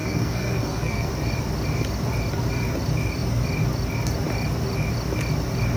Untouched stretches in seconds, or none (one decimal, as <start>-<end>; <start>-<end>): 1.1-5.8